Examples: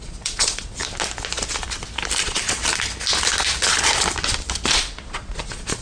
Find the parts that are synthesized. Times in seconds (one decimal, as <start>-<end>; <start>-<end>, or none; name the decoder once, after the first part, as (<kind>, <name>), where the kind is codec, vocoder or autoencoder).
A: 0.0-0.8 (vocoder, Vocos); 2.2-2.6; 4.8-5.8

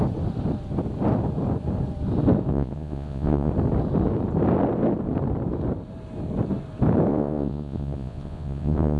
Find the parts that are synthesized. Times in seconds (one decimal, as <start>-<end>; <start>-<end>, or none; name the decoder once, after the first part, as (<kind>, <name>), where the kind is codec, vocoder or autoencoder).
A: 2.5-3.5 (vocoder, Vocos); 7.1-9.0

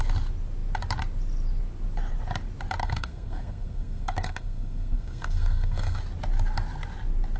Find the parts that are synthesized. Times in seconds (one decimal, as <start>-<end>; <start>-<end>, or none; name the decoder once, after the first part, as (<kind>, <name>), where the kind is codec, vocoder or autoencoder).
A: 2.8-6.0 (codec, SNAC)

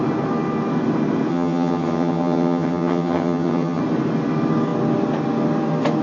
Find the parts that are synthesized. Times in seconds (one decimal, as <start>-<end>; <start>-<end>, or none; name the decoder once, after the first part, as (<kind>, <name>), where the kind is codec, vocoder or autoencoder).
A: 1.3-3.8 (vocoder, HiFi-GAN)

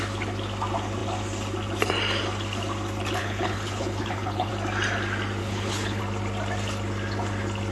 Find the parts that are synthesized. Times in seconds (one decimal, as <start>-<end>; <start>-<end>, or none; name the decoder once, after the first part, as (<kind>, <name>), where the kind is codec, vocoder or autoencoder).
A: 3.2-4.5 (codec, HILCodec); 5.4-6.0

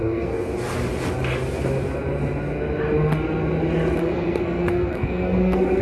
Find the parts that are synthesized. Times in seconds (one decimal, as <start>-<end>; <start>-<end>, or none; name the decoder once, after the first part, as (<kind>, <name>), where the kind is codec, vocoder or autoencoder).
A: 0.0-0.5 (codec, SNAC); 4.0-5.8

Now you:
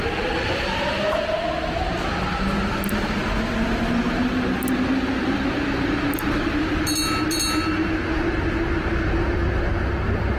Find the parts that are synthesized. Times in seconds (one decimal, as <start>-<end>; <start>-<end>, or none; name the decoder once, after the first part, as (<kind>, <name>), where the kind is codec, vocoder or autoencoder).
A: none

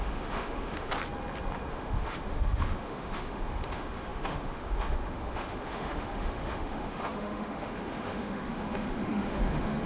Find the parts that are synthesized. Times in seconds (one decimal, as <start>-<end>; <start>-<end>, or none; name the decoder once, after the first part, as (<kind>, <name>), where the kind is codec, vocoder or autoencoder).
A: 0.0-0.9 (autoencoder, DAC-VAE); 1.7-9.9